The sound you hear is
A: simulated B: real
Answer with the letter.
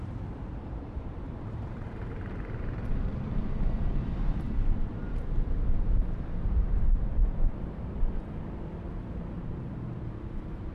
A